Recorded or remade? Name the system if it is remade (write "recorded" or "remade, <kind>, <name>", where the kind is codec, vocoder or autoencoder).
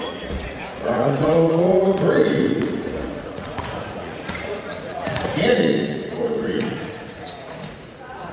remade, vocoder, Vocos